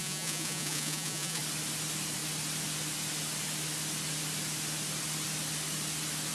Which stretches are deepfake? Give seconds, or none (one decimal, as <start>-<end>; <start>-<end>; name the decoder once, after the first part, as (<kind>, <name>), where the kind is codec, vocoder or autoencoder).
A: 0.0-1.4 (vocoder, Vocos)